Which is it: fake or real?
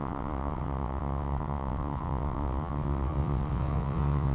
fake